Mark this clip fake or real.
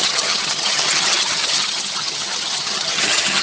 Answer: fake